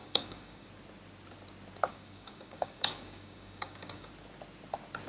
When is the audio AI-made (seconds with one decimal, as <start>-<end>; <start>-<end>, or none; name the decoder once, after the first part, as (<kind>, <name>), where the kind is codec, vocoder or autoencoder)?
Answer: 0.0-0.7 (codec, DAC); 1.9-4.1